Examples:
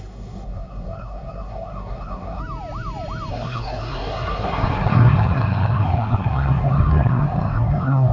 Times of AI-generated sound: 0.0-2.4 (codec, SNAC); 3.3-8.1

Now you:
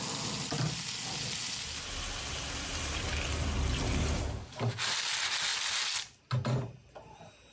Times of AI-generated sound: none

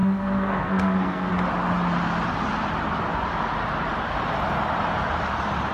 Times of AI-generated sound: 0.0-1.3 (codec, SNAC)

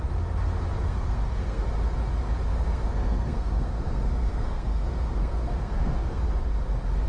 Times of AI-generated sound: 0.8-1.6 (codec, SNAC); 2.5-6.2